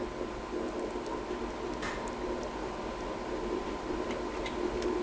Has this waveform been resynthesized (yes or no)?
no